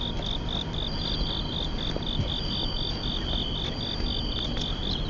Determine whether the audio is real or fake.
real